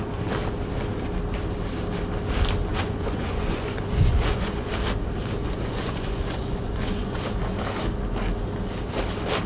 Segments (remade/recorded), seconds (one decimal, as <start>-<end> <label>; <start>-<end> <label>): 0.0-2.7 recorded; 2.7-4.7 remade; 4.7-5.4 recorded; 5.4-7.3 remade; 7.3-9.5 recorded